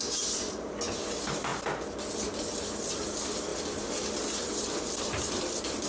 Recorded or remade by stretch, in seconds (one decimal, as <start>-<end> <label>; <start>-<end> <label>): 0.0-5.9 recorded